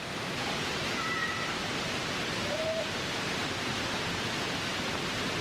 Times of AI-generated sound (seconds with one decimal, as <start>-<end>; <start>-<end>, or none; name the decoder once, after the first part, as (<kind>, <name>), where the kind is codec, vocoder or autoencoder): 0.0-3.4 (vocoder, BigVGAN v2)